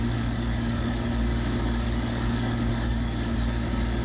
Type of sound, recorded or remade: remade